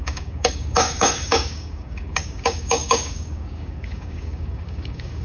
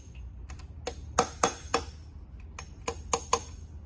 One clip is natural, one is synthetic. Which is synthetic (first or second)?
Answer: first